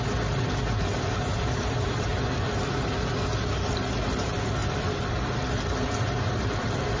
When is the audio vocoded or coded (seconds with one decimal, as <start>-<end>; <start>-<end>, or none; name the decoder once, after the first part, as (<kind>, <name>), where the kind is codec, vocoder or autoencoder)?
1.3-2.1 (vocoder, BigVGAN v2)